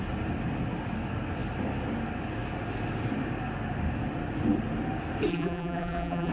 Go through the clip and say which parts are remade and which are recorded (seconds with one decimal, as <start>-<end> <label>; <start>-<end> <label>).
0.0-5.3 recorded; 5.3-6.3 remade